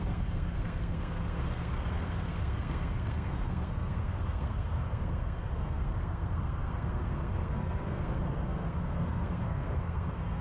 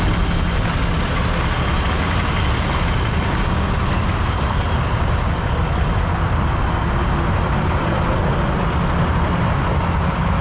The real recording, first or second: second